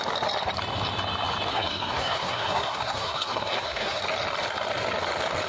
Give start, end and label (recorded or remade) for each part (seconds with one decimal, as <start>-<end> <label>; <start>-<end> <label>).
0.0-1.5 recorded; 1.5-4.0 remade; 4.0-5.5 recorded